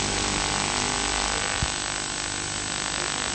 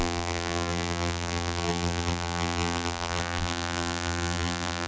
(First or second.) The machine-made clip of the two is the second